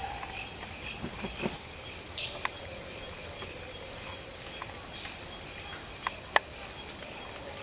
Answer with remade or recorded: recorded